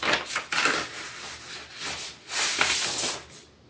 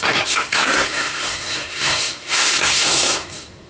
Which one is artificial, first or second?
second